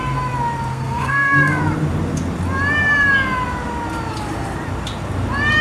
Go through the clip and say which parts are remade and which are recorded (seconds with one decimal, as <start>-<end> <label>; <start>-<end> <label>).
0.0-0.7 recorded; 0.7-1.6 remade; 1.6-5.6 recorded